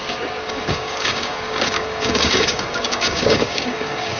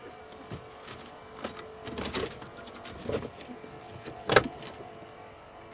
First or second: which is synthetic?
first